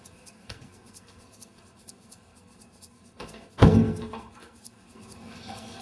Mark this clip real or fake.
fake